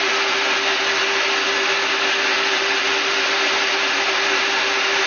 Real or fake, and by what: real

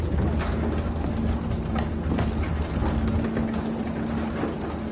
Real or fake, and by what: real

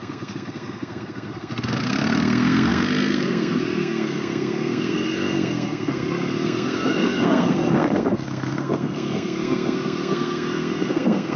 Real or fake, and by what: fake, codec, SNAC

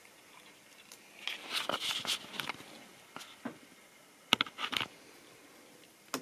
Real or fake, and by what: real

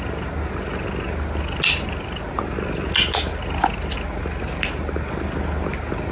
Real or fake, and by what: real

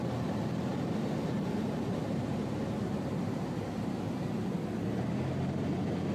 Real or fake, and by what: real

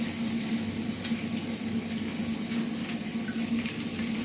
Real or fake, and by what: real